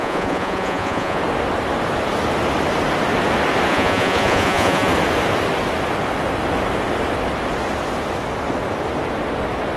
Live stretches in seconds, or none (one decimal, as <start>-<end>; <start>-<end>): 1.2-3.7; 4.9-9.8